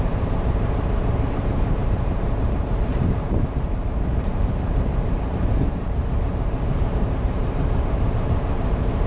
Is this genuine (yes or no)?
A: no